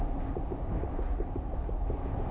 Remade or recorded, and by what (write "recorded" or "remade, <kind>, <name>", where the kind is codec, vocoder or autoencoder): recorded